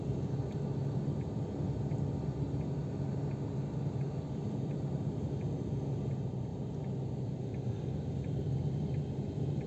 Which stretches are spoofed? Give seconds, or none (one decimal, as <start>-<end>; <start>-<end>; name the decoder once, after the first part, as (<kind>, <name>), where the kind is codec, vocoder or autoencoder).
none